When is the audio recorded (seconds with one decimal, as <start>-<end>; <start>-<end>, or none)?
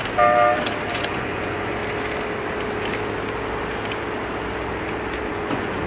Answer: 0.0-0.9; 1.8-5.3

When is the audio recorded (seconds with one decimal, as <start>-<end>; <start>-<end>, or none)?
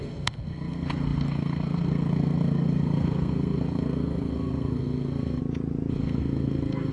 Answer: 5.4-5.9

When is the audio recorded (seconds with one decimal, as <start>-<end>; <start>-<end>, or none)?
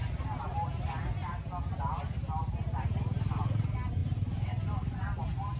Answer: 0.7-5.6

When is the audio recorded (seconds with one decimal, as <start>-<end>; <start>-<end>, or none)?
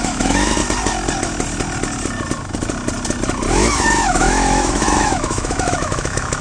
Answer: 0.6-3.5